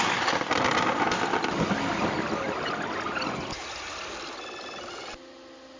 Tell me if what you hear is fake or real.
real